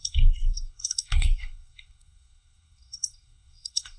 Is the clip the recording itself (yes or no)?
no